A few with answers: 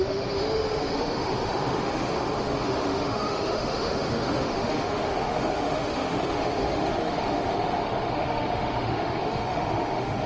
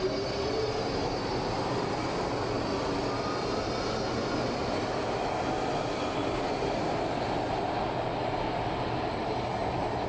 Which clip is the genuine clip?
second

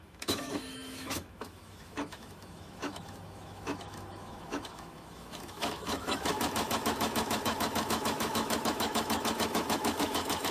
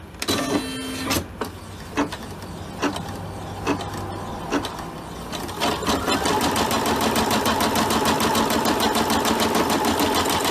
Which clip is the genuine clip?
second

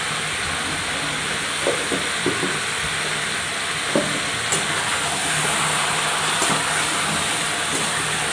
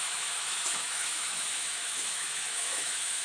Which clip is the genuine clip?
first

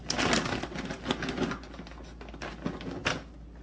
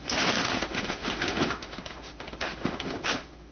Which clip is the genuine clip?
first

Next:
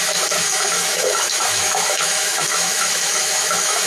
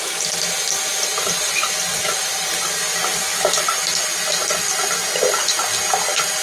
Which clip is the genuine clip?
second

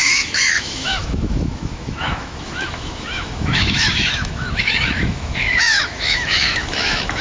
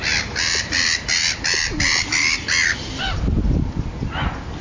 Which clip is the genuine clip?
second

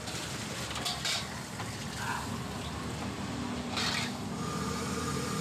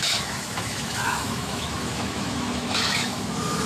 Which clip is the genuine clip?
first